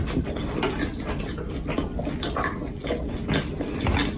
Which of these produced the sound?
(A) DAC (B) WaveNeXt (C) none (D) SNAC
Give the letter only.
C